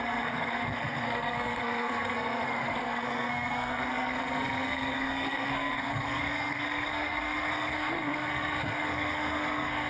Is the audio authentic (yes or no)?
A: no